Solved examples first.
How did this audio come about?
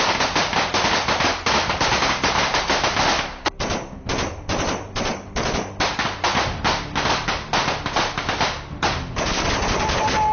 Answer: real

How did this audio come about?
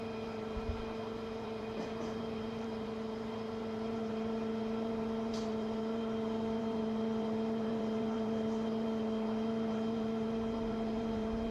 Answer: fake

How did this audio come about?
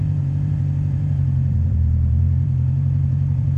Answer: fake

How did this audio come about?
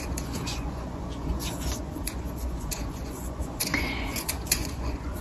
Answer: fake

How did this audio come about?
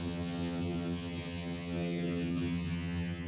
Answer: fake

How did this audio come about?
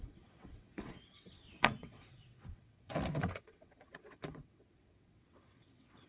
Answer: fake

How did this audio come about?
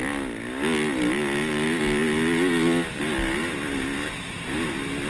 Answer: real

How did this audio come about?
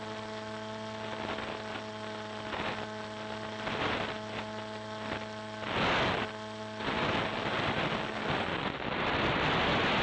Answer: real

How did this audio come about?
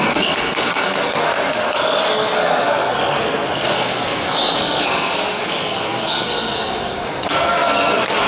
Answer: fake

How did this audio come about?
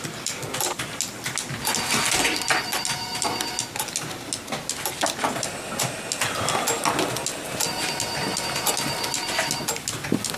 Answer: real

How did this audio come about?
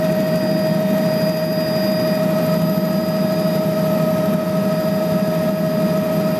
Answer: real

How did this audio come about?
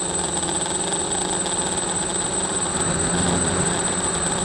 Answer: real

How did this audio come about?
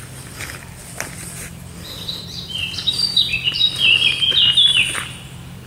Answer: fake